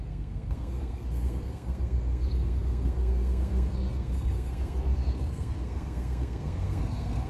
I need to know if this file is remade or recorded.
remade